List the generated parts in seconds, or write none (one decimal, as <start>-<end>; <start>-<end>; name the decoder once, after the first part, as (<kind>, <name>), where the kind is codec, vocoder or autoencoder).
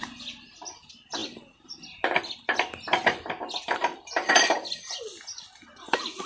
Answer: none